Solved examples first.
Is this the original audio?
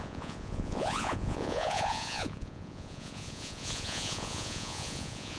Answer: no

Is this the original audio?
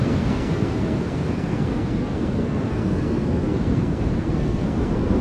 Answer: no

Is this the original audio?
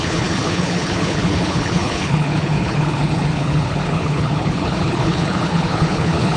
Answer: no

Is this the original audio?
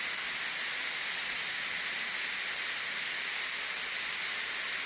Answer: yes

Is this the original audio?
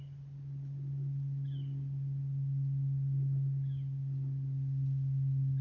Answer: yes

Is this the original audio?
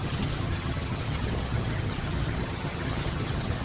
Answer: no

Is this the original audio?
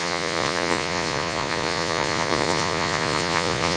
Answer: no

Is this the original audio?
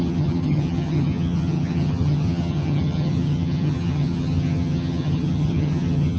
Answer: no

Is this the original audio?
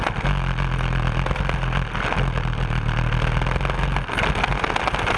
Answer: yes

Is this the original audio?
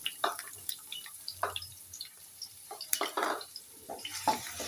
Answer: no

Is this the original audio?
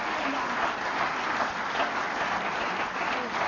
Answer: yes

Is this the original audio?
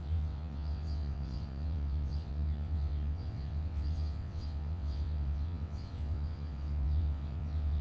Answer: no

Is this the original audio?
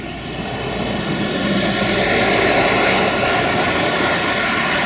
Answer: yes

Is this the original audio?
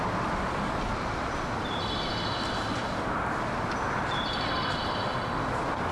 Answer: yes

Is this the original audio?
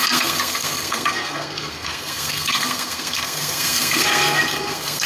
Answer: no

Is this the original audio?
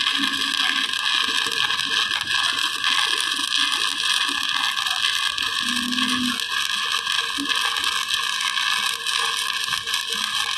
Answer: yes